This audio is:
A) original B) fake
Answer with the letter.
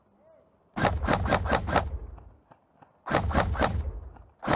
A